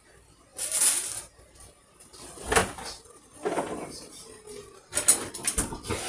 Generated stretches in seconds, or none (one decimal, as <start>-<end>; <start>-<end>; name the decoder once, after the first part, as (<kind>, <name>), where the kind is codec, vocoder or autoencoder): none